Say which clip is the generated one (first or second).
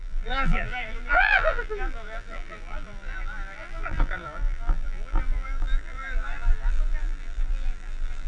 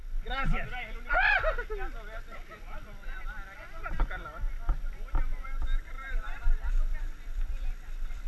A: first